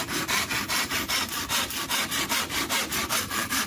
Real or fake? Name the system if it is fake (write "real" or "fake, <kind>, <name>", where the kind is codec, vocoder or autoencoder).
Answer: fake, vocoder, BigVGAN v2